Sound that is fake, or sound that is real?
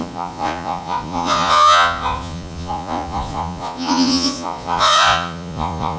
fake